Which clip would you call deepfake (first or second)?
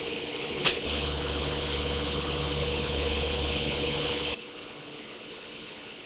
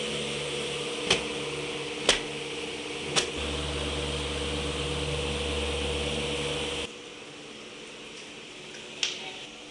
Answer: first